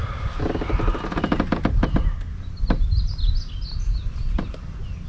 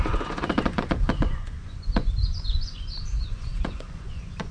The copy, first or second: second